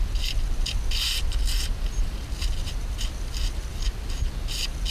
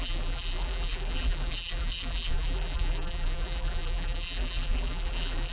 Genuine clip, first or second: first